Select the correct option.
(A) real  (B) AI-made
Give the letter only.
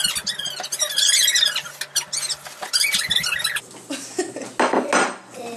A